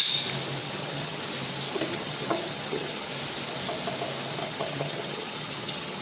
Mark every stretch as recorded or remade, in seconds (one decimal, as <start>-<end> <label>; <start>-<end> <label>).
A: 0.0-0.6 recorded; 0.6-1.2 remade; 1.2-1.9 recorded; 1.9-3.1 remade; 3.1-4.4 recorded; 4.4-6.0 remade